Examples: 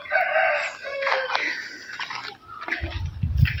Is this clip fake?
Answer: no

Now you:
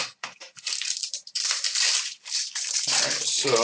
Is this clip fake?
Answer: yes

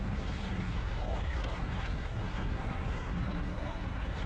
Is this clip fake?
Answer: yes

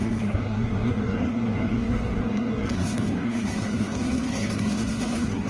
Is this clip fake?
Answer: yes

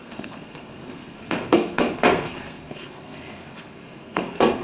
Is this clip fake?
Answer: yes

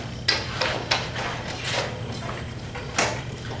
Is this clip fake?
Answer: no